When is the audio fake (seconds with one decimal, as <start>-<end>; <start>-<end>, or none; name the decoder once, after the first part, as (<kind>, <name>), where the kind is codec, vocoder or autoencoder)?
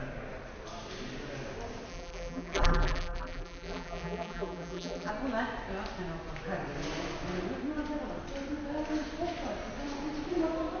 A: 1.9-5.1 (vocoder, BigVGAN v2)